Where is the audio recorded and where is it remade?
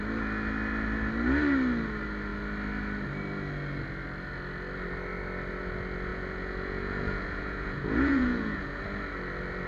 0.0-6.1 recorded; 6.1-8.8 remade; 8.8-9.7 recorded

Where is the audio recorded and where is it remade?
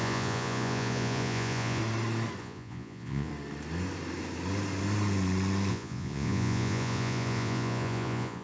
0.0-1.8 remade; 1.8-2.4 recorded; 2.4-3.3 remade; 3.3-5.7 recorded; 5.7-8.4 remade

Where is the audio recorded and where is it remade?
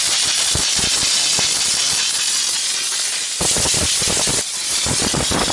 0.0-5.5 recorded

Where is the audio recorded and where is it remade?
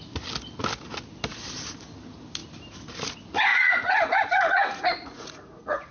0.0-3.5 recorded; 3.5-5.9 remade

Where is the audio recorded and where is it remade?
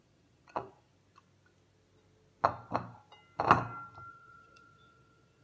0.0-0.9 remade; 0.9-4.1 recorded; 4.1-5.4 remade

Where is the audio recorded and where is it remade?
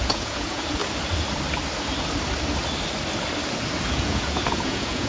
0.0-0.8 remade; 0.8-3.9 recorded; 3.9-5.1 remade